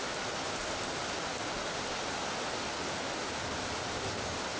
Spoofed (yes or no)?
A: no